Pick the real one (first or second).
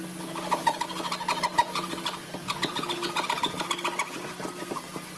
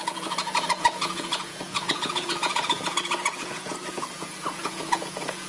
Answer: first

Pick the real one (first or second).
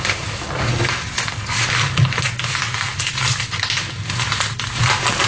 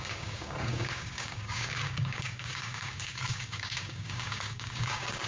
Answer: first